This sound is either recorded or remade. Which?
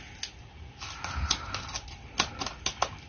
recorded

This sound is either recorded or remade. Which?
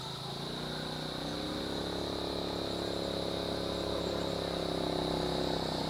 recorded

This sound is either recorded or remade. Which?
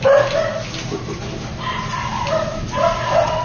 recorded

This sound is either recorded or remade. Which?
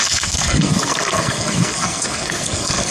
remade